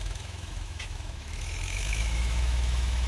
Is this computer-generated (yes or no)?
yes